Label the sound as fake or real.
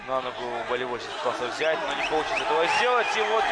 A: real